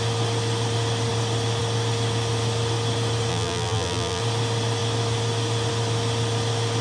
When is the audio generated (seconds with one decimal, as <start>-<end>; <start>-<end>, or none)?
3.3-4.2